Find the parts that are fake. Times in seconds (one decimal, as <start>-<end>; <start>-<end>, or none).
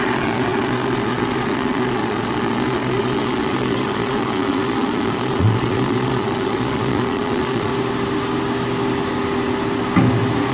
0.0-7.7